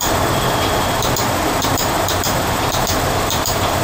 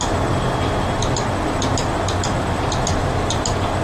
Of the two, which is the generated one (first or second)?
first